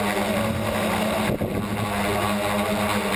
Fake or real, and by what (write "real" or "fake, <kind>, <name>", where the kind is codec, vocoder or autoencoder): real